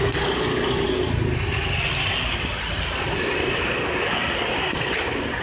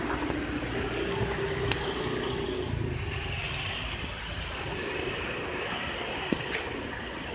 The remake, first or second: second